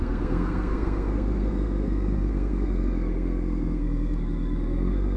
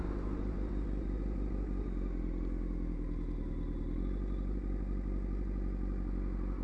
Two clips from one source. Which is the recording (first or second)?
second